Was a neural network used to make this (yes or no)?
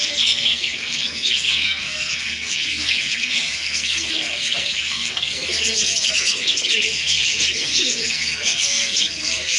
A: yes